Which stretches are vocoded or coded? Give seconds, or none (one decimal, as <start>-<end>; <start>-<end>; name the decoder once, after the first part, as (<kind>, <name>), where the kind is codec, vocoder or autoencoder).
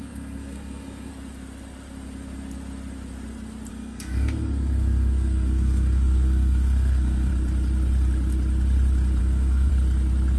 0.0-1.1 (codec, SNAC); 3.7-7.3; 9.2-9.7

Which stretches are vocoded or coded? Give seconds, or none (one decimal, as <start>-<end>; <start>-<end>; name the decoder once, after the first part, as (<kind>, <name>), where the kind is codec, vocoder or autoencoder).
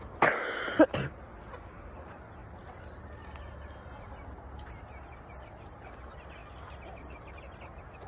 none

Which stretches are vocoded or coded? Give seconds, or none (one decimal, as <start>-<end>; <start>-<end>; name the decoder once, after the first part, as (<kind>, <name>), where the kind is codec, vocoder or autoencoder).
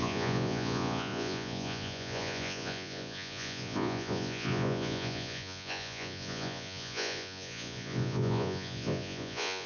0.0-9.7 (vocoder, Vocos)